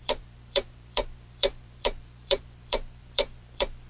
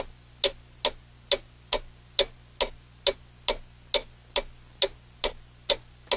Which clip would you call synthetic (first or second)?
first